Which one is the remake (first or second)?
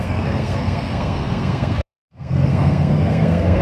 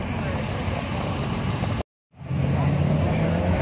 first